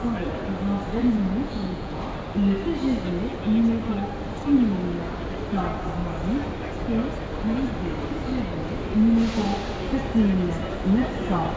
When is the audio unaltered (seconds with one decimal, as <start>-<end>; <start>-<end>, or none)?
0.0-1.0; 2.0-11.6